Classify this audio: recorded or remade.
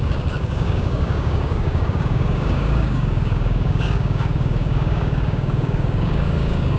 remade